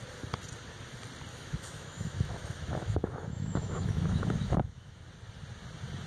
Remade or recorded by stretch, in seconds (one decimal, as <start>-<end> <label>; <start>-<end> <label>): 0.0-1.3 recorded; 1.3-5.0 remade; 5.0-6.1 recorded